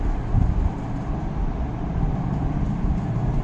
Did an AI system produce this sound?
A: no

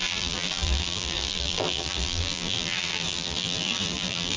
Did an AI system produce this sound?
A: yes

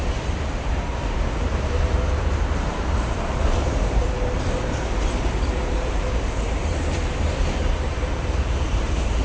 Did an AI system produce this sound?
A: yes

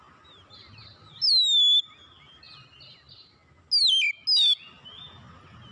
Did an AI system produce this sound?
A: no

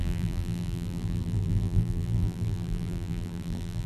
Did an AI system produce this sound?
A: yes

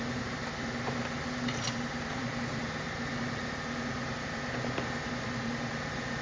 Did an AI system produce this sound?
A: yes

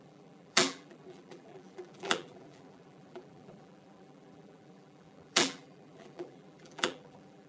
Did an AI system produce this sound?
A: yes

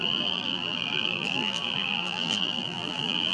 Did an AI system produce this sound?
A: yes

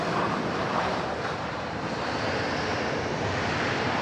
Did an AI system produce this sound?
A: yes